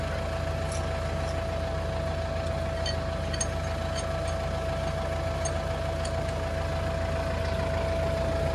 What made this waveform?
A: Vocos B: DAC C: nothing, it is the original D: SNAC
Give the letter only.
C